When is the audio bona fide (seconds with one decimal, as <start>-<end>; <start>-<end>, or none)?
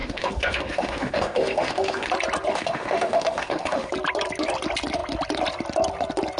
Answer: 2.1-2.5; 3.9-6.4